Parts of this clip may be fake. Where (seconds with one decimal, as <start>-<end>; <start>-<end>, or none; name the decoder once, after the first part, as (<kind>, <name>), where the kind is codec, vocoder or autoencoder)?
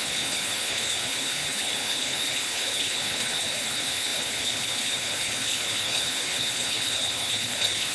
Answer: 0.0-7.9 (codec, HILCodec)